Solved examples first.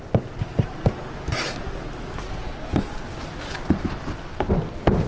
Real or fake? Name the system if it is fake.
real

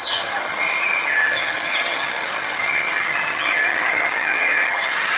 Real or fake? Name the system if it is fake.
fake, vocoder, HiFi-GAN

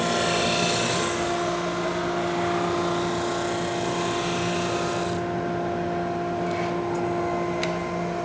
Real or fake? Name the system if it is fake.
real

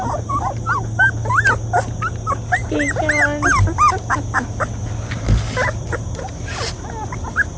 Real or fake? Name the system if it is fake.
real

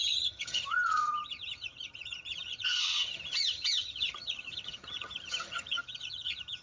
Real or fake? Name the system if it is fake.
fake, vocoder, HiFi-GAN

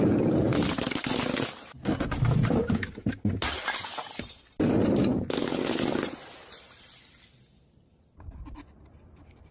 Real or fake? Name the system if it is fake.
real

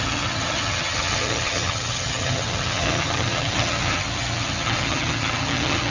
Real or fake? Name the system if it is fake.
fake, vocoder, HiFi-GAN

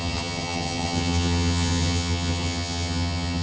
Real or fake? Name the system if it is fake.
fake, vocoder, HiFi-GAN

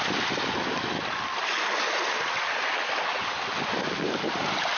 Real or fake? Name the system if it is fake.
real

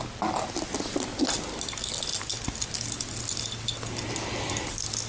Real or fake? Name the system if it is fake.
real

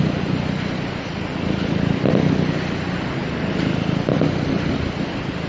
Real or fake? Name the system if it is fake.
real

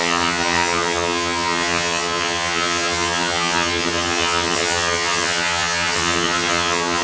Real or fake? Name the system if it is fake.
fake, vocoder, HiFi-GAN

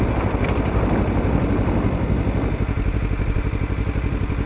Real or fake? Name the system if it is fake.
real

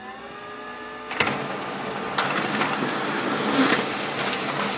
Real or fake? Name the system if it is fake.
real